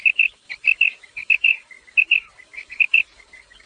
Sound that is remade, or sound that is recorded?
remade